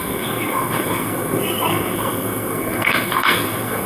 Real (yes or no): no